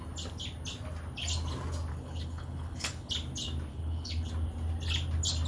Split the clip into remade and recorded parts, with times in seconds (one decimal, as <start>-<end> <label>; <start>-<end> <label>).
0.0-1.9 recorded; 1.9-3.1 remade; 3.1-3.7 recorded; 3.7-4.3 remade; 4.3-5.5 recorded